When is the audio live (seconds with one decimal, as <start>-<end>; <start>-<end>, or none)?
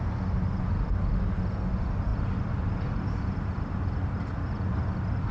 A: 0.0-5.3